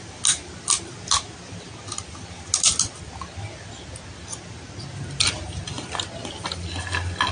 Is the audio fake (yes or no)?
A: no